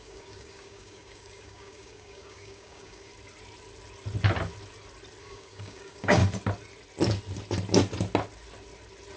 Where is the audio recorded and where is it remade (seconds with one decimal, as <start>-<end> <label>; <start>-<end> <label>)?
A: 0.0-3.1 remade; 3.1-5.2 recorded; 5.2-6.2 remade; 6.2-9.2 recorded